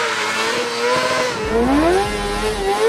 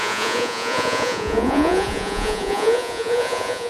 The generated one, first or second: second